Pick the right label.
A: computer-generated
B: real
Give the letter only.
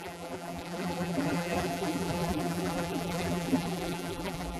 A